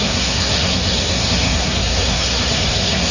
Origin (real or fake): fake